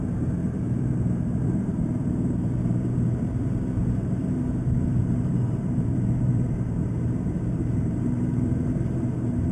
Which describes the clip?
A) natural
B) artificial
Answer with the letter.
B